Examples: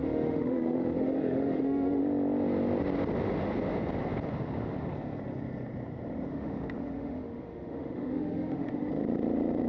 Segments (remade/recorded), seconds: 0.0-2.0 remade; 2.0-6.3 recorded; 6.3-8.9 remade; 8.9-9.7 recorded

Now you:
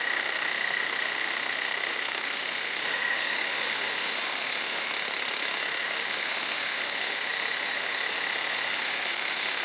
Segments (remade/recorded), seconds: 0.0-4.9 remade; 4.9-5.8 recorded; 5.8-9.6 remade

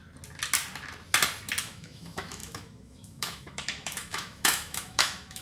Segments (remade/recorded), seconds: 0.0-1.6 recorded; 1.6-5.4 remade

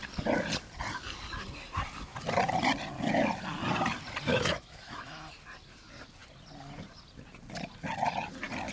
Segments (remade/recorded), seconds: 0.0-4.3 recorded; 4.3-5.3 remade; 5.3-8.7 recorded

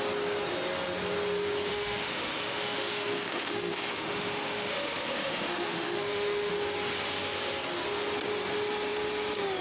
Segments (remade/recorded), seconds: 0.0-1.7 recorded; 1.7-6.5 remade; 6.5-9.6 recorded

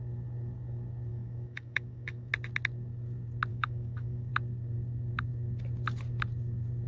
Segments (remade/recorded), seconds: 0.0-1.1 recorded; 1.1-2.3 remade; 2.3-3.5 recorded; 3.5-4.3 remade; 4.3-6.9 recorded

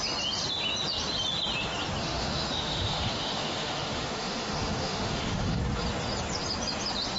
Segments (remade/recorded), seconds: 0.0-2.0 recorded; 2.0-5.6 remade; 5.6-7.2 recorded

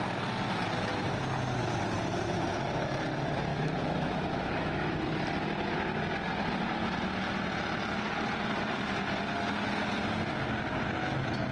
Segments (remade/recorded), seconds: 0.0-3.5 recorded; 3.5-4.9 remade; 4.9-11.5 recorded